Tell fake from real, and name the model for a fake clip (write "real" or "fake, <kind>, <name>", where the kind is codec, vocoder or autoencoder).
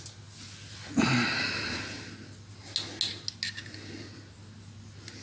real